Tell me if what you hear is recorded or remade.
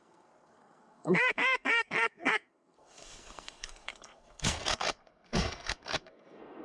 remade